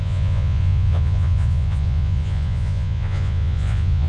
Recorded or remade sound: remade